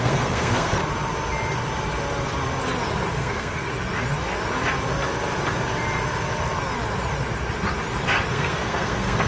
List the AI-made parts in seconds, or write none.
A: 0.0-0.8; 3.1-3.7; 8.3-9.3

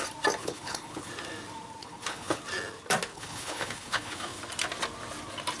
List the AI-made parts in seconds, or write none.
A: 0.4-1.1; 1.8-2.4; 3.1-4.4

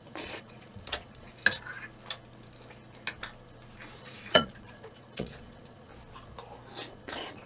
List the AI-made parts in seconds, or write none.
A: 0.0-1.3; 3.9-5.9; 6.9-7.5

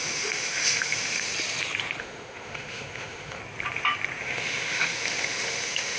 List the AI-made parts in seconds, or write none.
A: 0.0-1.3; 2.0-3.4; 4.2-6.0

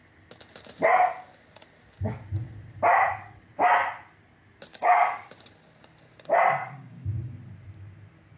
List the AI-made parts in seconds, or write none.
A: 4.7-5.3; 6.6-7.3

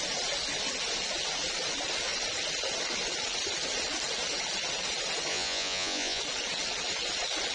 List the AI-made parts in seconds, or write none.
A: 5.3-6.2

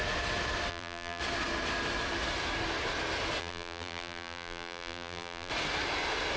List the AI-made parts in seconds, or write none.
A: 0.7-1.2; 3.4-5.5

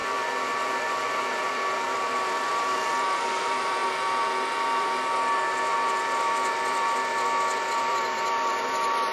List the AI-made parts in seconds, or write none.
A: 0.0-3.8; 7.8-9.1